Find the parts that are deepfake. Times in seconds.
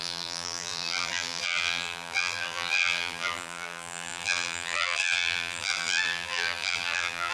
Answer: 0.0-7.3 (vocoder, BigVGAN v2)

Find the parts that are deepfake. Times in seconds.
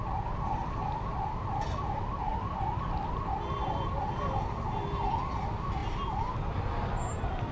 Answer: none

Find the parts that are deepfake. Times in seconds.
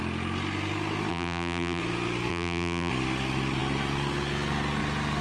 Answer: 1.1-1.8 (vocoder, BigVGAN v2); 2.3-2.9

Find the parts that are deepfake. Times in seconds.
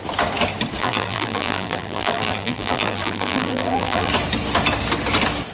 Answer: 0.8-4.1 (vocoder, BigVGAN v2)